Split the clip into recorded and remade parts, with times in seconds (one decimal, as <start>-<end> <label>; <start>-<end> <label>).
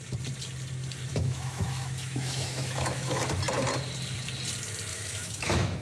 0.0-1.1 recorded; 1.1-3.2 remade; 3.2-4.9 recorded; 4.9-5.8 remade